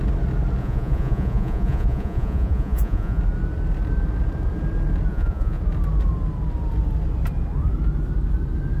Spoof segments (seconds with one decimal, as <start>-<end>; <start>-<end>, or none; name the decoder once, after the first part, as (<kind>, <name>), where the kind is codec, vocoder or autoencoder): 0.6-3.2 (vocoder, Vocos); 5.1-5.6